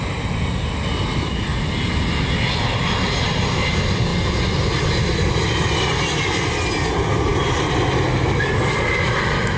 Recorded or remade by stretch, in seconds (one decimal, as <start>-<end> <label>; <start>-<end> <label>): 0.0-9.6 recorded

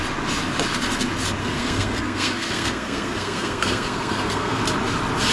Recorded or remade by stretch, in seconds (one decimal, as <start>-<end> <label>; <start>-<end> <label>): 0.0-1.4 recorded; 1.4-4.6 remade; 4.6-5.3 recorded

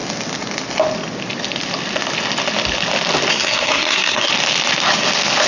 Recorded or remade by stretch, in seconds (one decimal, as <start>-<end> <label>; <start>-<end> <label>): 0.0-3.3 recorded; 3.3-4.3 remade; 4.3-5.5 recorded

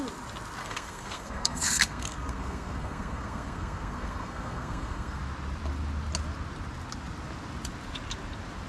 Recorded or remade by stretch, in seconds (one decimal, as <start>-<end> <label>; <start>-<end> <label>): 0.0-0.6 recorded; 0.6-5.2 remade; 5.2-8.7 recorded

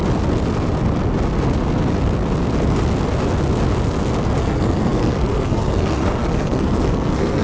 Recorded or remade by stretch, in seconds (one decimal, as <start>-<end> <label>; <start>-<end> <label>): 0.0-4.4 recorded; 4.4-7.4 remade

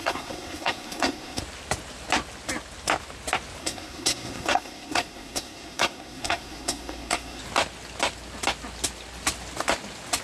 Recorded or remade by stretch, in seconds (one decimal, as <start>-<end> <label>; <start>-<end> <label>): 0.0-1.4 remade; 1.4-3.6 recorded; 3.6-7.4 remade; 7.4-10.2 recorded